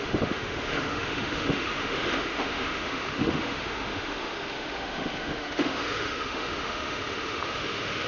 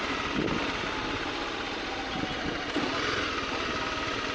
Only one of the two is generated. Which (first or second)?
first